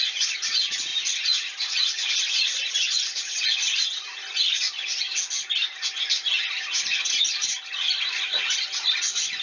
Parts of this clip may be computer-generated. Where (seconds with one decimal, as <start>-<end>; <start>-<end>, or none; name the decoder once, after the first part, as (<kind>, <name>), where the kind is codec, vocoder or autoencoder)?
none